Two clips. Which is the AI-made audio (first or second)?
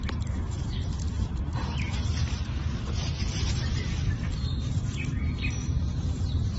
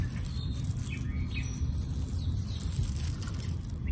first